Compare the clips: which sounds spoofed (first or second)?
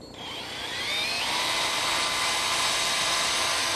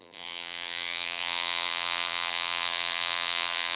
second